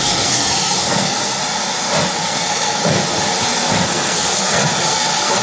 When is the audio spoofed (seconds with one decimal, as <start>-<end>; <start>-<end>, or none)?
0.0-1.4; 2.2-3.0; 3.7-5.4